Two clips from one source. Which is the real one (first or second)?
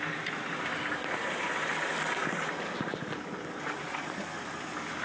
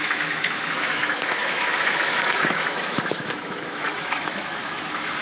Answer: first